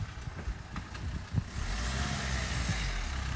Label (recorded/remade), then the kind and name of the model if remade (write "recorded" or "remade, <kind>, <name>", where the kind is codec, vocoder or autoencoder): recorded